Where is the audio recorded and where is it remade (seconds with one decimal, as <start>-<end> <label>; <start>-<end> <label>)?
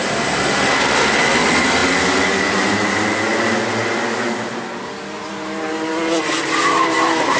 0.0-7.4 recorded